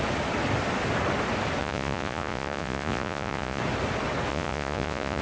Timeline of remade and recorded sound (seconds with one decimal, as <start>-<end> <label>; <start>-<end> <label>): 0.0-1.6 recorded; 1.6-3.6 remade; 3.6-4.3 recorded; 4.3-5.2 remade